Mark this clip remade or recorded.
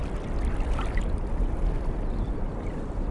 recorded